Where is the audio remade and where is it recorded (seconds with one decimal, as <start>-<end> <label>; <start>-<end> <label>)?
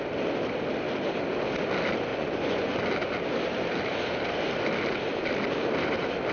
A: 0.0-2.1 recorded; 2.1-2.8 remade; 2.8-6.3 recorded